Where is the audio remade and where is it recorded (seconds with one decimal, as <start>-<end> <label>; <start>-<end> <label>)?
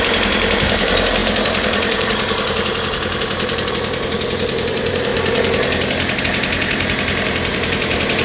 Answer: 0.0-5.1 remade; 5.1-6.2 recorded; 6.2-8.2 remade